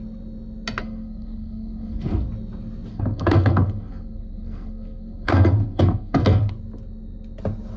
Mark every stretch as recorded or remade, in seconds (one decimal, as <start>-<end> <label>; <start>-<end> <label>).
0.0-0.8 recorded; 0.8-2.3 remade; 2.3-2.9 recorded; 2.9-6.5 remade; 6.5-7.8 recorded